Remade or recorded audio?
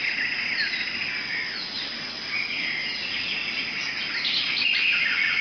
recorded